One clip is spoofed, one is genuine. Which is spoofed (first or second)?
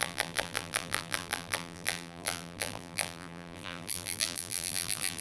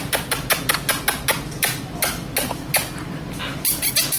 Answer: first